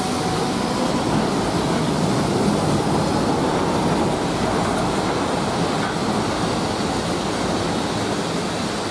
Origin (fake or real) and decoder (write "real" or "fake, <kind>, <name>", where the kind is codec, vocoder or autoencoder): real